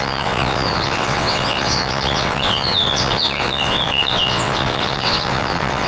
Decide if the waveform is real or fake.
fake